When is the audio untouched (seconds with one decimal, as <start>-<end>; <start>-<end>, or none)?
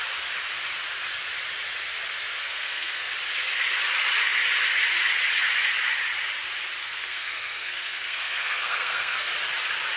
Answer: 0.0-2.4; 3.1-6.8; 9.3-10.0